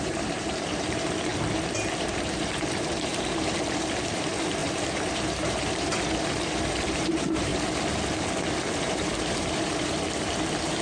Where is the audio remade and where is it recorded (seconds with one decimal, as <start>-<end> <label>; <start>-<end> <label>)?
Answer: 0.0-1.3 remade; 1.3-1.9 recorded; 1.9-7.5 remade; 7.5-8.8 recorded; 8.8-10.8 remade